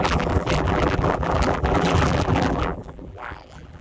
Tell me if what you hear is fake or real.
fake